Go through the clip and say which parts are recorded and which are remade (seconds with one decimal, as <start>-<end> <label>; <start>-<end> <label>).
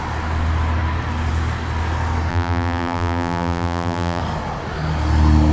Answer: 0.0-2.3 recorded; 2.3-4.2 remade; 4.2-5.5 recorded